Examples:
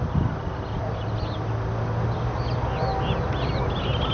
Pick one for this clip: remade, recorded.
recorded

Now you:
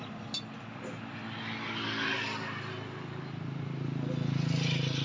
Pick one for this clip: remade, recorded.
recorded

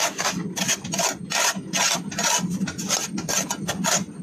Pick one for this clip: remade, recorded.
recorded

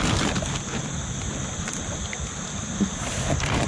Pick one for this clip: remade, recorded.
recorded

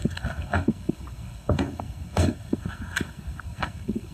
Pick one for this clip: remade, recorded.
remade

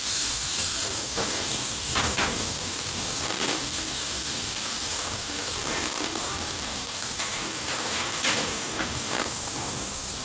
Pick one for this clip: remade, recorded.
remade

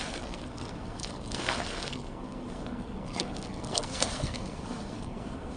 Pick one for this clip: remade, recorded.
remade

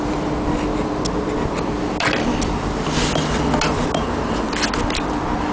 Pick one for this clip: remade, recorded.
recorded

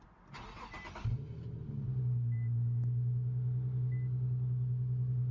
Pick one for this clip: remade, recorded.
recorded